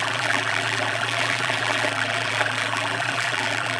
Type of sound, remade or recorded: remade